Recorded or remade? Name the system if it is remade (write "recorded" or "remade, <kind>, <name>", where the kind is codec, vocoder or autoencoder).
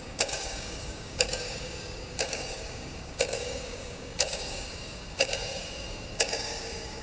remade, codec, DAC